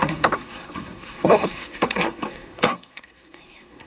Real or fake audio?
fake